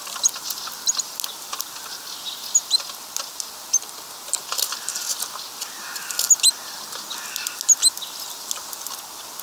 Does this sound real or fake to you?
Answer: real